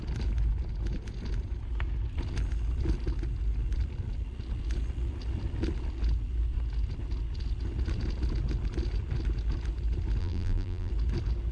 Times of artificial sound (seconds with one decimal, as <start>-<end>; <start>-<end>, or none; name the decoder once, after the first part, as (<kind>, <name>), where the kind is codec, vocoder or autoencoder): 10.2-10.9 (vocoder, BigVGAN v2)